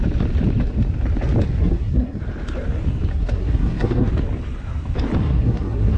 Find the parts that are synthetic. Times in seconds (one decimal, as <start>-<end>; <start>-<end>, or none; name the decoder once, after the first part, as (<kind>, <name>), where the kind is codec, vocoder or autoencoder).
1.6-2.2 (codec, SNAC); 3.1-4.1; 5.2-6.0